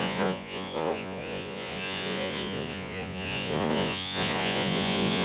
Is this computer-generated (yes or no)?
yes